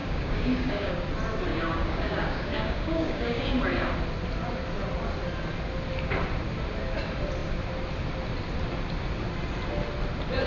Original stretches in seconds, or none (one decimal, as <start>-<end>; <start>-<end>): 0.9-1.5; 3.5-10.5